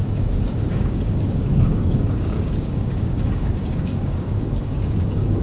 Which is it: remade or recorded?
remade